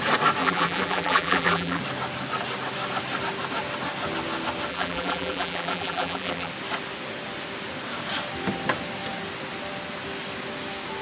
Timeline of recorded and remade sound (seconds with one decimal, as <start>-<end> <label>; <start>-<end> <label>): 0.0-0.4 recorded; 0.4-1.8 remade; 1.8-4.7 recorded; 4.7-6.5 remade; 6.5-11.0 recorded